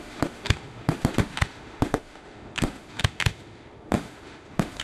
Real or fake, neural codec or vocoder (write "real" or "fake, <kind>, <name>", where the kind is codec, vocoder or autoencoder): fake, autoencoder, DAC-VAE